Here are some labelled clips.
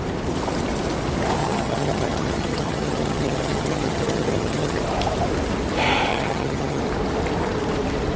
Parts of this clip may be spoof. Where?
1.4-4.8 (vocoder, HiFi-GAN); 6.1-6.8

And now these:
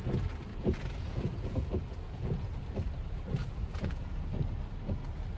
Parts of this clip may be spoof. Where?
0.5-2.6 (vocoder, Vocos); 3.4-4.2

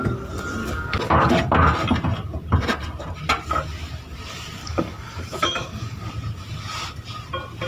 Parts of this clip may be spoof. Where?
0.6-1.3 (codec, DAC); 4.6-6.1